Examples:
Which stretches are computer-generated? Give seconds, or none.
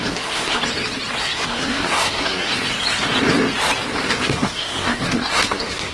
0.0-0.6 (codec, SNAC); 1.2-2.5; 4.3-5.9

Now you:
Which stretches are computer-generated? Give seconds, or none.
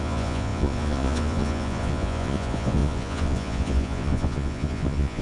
0.0-5.2 (vocoder, Vocos)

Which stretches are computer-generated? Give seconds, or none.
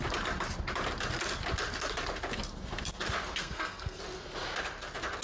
3.4-4.0 (codec, SNAC)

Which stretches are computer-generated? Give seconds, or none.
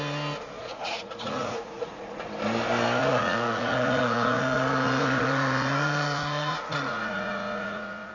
0.6-2.2 (vocoder, Vocos); 3.0-8.1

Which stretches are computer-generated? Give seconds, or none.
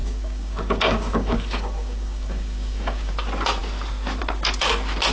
0.0-3.1 (codec, DAC)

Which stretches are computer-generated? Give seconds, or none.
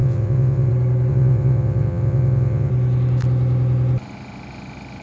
0.0-0.7 (vocoder, WaveNeXt); 1.1-2.7